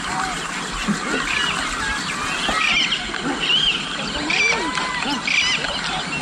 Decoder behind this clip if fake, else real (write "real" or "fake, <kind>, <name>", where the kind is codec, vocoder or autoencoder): real